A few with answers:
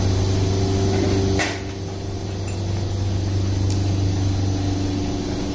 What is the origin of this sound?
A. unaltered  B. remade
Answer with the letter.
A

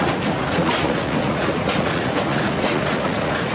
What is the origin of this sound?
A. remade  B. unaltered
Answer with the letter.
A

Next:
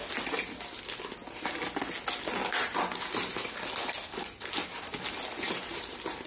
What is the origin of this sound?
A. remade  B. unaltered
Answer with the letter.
B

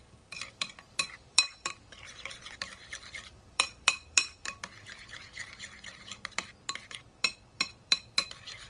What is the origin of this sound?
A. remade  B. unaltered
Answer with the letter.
A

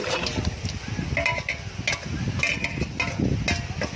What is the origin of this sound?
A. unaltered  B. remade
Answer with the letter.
A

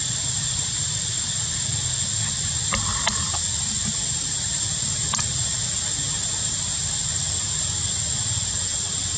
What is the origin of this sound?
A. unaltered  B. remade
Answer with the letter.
A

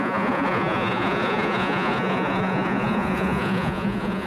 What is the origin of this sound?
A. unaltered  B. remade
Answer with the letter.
B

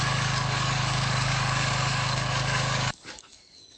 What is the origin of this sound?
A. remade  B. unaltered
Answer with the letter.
A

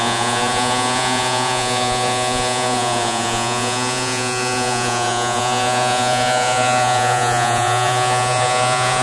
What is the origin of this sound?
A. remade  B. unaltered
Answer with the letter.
A